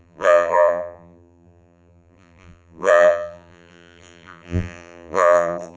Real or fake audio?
fake